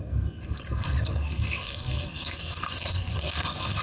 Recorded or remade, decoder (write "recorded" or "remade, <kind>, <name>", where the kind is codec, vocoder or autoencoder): remade, codec, SNAC